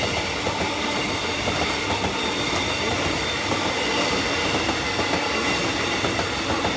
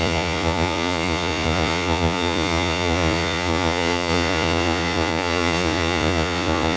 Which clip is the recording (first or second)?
first